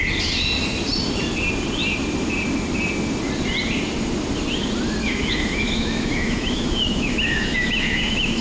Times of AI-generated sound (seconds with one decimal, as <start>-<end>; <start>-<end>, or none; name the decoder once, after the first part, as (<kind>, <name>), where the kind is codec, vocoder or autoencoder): 5.0-8.4 (autoencoder, DAC-VAE)